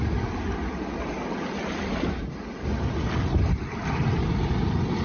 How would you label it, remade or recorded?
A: recorded